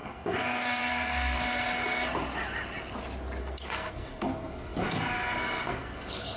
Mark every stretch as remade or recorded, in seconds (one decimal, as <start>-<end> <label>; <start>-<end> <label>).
0.0-2.0 remade; 2.0-3.4 recorded; 3.4-6.4 remade